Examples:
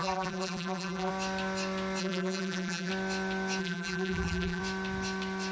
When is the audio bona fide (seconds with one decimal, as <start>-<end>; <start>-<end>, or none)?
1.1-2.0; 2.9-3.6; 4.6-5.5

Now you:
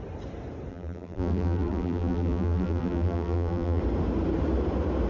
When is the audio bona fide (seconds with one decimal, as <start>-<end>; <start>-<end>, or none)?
0.0-0.7; 3.8-5.1

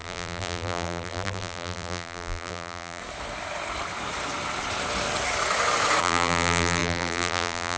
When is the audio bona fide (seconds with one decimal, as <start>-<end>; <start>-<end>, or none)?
3.0-6.0

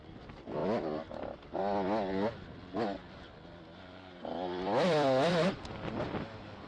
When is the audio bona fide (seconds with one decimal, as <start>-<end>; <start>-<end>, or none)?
0.0-0.6; 1.6-3.0; 6.3-6.7

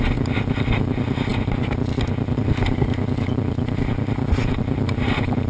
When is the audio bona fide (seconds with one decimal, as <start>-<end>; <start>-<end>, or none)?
0.0-5.5